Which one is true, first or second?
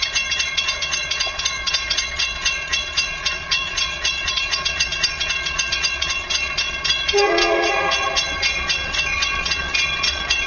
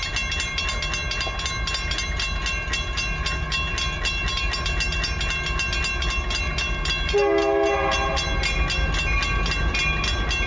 second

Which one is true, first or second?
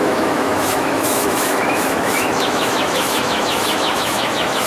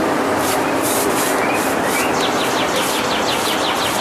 second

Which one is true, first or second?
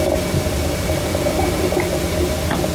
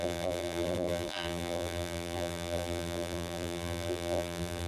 first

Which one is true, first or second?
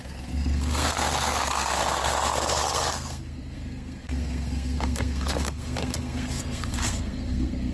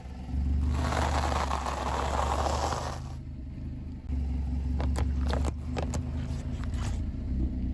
second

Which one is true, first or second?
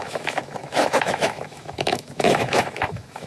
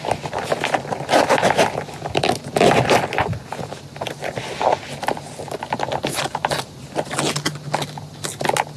second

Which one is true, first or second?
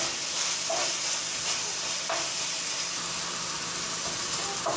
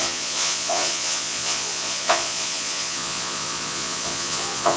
first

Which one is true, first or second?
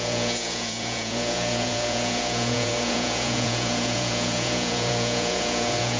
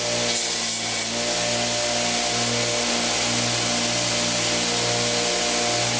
second